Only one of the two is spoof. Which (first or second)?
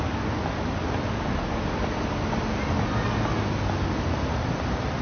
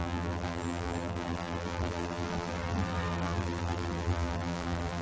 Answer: second